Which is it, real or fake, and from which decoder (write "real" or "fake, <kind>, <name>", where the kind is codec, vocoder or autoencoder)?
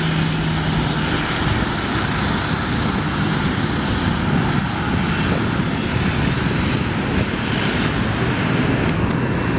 real